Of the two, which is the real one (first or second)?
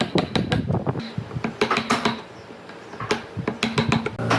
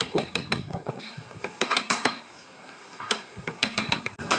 first